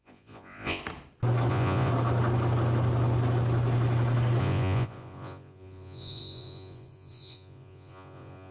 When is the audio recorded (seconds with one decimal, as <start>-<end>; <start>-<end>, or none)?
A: 0.8-1.5; 1.9-4.4